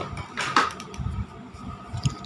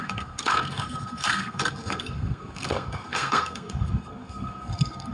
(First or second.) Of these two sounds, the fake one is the second